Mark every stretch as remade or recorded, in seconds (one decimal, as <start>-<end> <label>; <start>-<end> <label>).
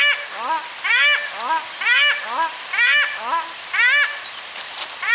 0.0-5.1 recorded